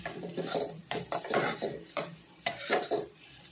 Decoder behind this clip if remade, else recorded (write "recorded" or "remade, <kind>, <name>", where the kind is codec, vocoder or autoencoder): remade, vocoder, BigVGAN v2